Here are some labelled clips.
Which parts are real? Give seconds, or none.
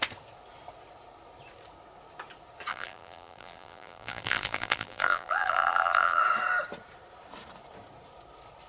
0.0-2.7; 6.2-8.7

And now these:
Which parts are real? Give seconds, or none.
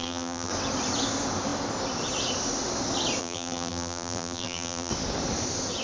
0.5-3.2; 4.9-5.8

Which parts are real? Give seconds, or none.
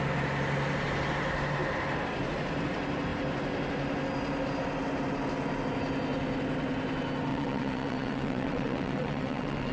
0.0-7.3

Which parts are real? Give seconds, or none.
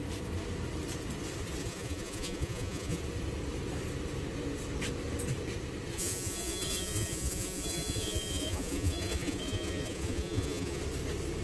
0.0-1.6; 3.0-5.9; 10.8-11.4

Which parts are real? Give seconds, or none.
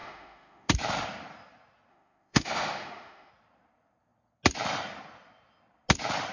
0.7-1.9; 3.3-6.3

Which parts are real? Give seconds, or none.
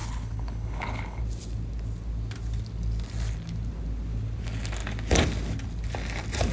1.2-6.5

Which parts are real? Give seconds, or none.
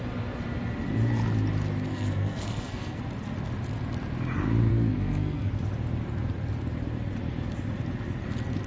0.0-1.9; 3.0-4.7; 5.5-8.7